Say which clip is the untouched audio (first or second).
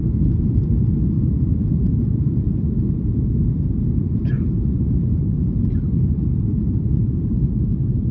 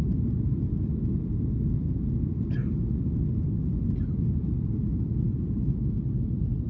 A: second